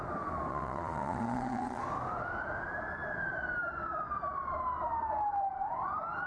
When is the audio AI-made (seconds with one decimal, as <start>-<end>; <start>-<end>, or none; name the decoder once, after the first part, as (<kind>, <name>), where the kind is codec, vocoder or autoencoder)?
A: 0.5-1.8 (vocoder, Vocos)